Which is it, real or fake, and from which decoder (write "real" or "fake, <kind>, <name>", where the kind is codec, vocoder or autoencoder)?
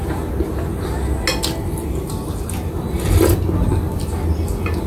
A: real